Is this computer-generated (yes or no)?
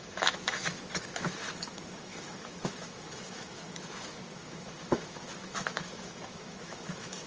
yes